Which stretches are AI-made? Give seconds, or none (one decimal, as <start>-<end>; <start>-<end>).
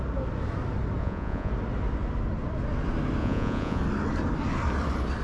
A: 1.0-1.5; 3.2-3.8